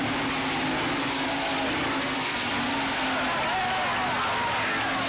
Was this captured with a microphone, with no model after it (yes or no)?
yes